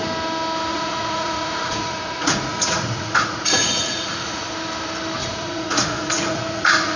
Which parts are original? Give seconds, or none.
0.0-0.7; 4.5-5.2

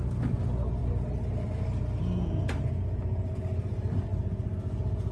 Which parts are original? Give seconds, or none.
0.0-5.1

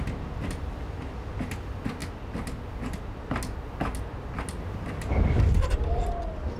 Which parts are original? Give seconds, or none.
0.0-6.6